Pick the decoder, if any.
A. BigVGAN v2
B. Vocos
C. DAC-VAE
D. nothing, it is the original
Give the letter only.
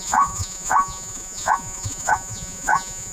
B